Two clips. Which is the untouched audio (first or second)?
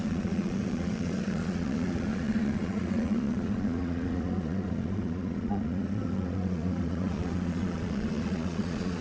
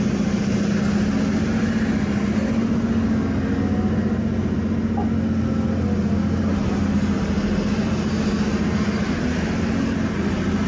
second